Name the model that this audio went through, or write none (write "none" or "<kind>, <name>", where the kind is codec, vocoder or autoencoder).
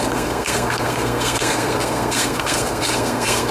codec, SNAC